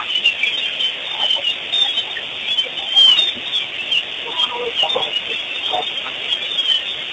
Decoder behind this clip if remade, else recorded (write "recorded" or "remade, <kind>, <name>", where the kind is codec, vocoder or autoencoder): recorded